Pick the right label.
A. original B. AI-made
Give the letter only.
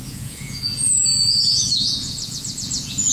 B